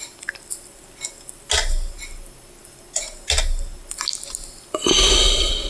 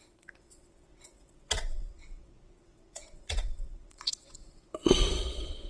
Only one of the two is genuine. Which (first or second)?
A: first